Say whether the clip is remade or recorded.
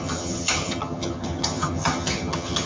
remade